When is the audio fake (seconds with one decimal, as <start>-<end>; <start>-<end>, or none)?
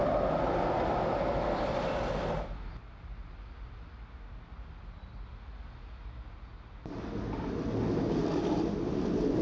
none